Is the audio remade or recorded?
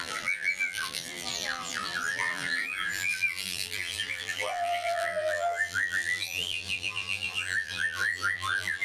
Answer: remade